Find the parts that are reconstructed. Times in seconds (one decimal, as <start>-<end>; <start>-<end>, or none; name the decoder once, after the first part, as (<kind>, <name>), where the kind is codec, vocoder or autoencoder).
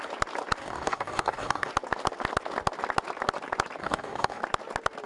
0.6-1.7 (codec, DAC); 3.8-4.4